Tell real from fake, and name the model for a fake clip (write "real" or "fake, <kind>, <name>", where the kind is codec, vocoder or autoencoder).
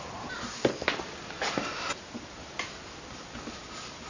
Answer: real